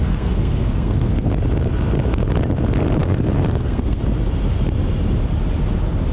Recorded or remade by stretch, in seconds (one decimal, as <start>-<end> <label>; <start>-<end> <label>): 0.0-1.3 remade; 1.3-3.0 recorded; 3.0-4.0 remade; 4.0-6.1 recorded

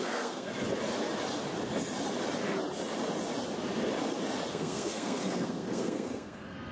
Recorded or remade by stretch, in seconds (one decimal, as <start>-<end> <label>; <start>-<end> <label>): 0.0-0.5 remade; 0.5-4.5 recorded; 4.5-6.7 remade